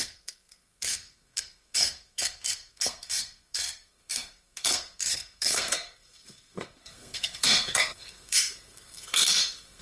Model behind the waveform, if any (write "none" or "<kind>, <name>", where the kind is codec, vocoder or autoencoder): codec, SNAC